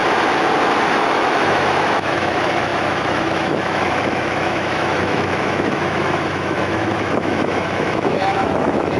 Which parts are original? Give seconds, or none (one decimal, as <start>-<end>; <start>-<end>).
0.0-0.9